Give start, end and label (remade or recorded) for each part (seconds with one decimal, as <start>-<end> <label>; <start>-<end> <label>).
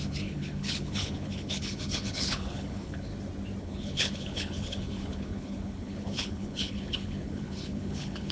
0.0-3.1 remade; 3.1-3.6 recorded; 3.6-8.3 remade